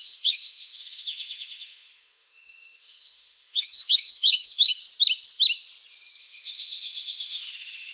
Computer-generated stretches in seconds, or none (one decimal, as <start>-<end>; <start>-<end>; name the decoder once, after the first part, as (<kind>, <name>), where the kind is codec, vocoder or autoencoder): 0.0-4.8 (autoencoder, DAC-VAE); 6.2-7.9